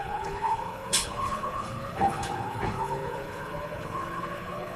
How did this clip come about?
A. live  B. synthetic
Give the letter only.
B